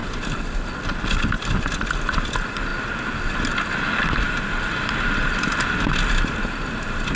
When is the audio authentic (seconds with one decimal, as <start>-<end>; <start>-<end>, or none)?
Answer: 0.0-7.2